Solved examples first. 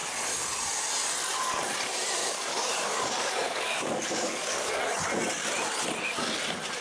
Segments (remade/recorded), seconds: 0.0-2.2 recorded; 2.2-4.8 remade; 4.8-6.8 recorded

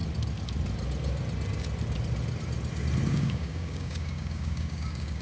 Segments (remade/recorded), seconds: 0.0-3.1 recorded; 3.1-5.2 remade

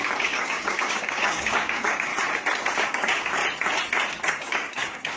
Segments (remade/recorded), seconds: 0.0-2.1 remade; 2.1-2.8 recorded; 2.8-3.4 remade; 3.4-4.3 recorded; 4.3-5.2 remade

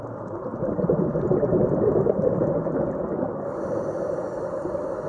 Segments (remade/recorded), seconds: 0.0-3.1 recorded; 3.1-3.6 remade; 3.6-5.1 recorded

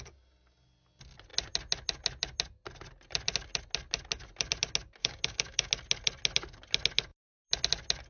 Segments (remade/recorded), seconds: 0.0-5.0 recorded; 5.0-5.7 remade; 5.7-8.1 recorded

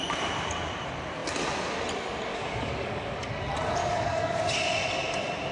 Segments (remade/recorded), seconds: 0.0-2.3 recorded; 2.3-3.3 remade; 3.3-3.8 recorded; 3.8-4.4 remade; 4.4-5.5 recorded

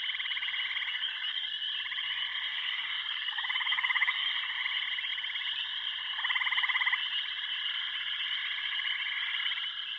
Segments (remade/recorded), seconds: 0.0-0.9 recorded; 0.9-1.5 remade; 1.5-2.5 recorded; 2.5-4.3 remade; 4.3-10.0 recorded

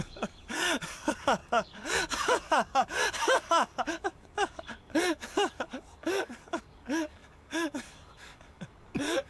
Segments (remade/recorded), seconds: 0.0-9.3 remade